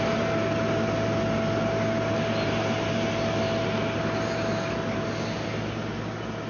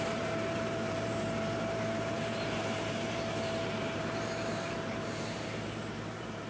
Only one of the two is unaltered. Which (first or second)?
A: first